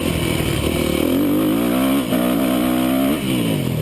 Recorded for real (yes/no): yes